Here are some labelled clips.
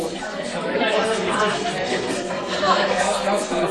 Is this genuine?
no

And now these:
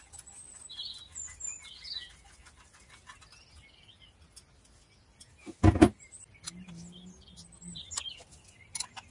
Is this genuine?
yes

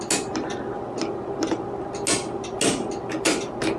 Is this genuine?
yes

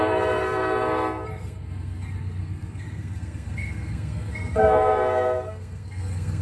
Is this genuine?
no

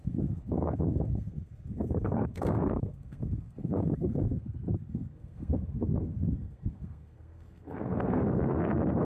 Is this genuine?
no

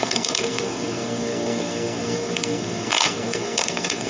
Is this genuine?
no